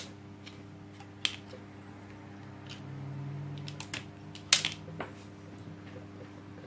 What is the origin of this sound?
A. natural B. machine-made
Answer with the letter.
A